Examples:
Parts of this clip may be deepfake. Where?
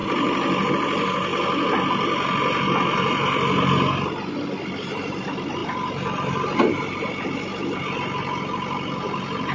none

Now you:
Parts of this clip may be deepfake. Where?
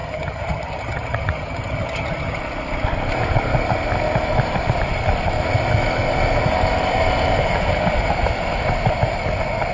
0.0-2.4 (vocoder, HiFi-GAN)